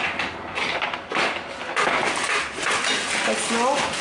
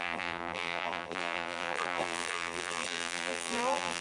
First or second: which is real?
first